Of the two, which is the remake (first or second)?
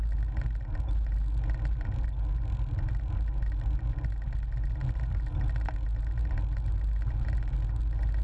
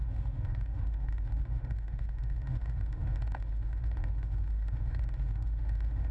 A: second